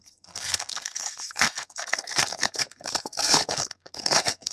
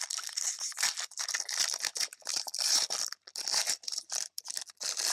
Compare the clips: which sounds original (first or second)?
second